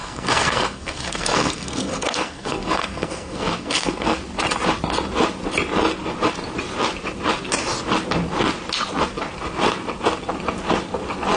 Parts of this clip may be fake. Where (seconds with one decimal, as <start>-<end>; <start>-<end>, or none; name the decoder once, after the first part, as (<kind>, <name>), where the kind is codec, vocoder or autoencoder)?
0.0-4.2 (codec, SNAC)

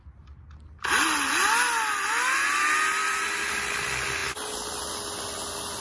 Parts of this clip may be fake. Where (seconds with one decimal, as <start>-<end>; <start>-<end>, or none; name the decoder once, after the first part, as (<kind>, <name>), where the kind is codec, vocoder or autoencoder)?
3.0-3.5 (vocoder, BigVGAN v2)

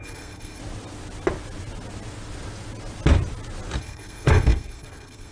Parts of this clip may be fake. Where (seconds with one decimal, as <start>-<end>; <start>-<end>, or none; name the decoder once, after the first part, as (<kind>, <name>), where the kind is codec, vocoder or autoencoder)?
0.0-0.6 (codec, SNAC); 3.8-5.3

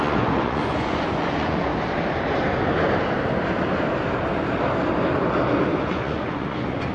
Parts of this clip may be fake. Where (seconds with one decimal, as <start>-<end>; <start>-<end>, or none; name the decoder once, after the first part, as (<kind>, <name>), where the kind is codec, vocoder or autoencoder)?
0.0-1.7 (vocoder, Vocos); 5.8-6.9